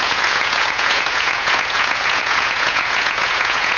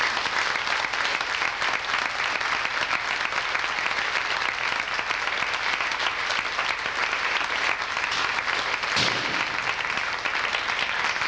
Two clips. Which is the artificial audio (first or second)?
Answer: first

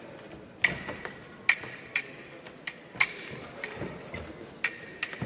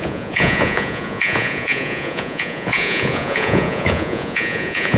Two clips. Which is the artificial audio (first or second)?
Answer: second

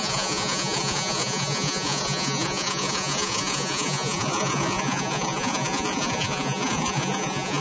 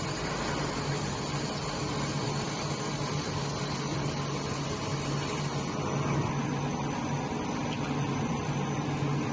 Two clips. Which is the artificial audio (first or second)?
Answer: first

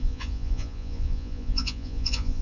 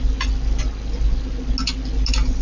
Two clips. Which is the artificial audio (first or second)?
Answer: first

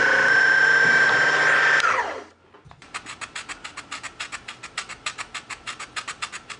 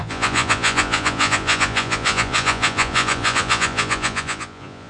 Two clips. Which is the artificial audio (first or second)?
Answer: second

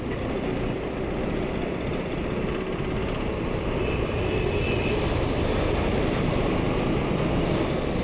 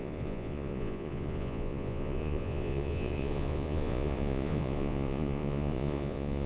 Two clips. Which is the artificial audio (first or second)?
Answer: second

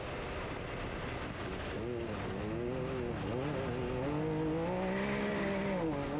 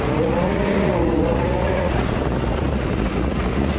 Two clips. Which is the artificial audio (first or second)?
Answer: second